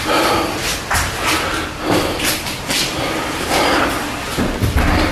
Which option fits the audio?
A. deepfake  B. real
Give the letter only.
B